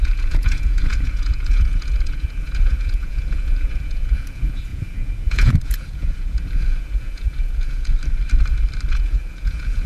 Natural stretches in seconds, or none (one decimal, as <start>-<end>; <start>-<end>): 7.9-8.9